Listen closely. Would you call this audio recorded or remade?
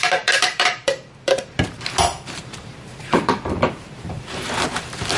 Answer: remade